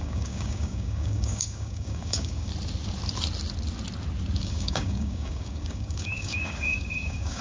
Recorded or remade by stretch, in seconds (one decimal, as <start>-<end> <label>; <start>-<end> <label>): 0.0-2.5 remade; 2.5-4.4 recorded; 4.4-7.4 remade